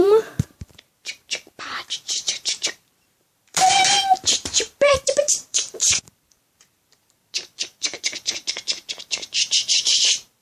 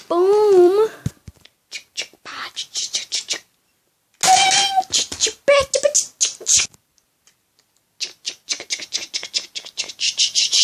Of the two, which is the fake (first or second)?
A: first